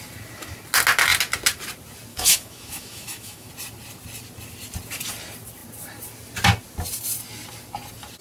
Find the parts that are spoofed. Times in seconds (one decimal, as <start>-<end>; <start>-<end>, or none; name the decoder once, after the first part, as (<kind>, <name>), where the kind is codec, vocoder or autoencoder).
2.1-3.5 (autoencoder, DAC-VAE)